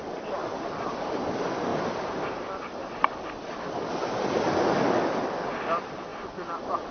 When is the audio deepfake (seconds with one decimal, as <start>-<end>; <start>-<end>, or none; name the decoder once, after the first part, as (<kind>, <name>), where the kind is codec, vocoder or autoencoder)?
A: none